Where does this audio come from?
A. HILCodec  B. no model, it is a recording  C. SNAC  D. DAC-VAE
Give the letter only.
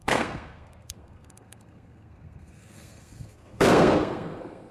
C